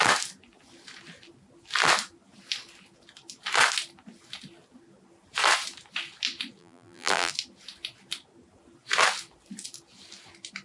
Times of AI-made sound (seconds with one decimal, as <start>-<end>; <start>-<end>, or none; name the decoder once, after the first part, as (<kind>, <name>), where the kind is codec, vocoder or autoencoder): 6.6-7.3 (vocoder, BigVGAN v2)